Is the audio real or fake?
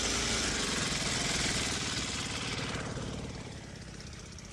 real